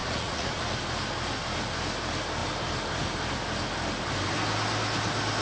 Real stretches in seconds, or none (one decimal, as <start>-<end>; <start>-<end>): 0.6-5.4